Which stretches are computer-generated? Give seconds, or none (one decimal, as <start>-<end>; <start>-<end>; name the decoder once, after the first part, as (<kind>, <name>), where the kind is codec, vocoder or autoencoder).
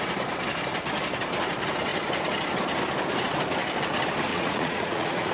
4.3-5.3 (vocoder, Vocos)